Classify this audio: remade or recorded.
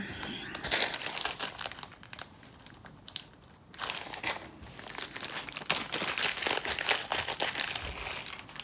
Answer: recorded